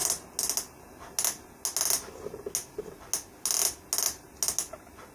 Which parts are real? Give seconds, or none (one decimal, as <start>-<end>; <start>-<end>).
0.0-5.1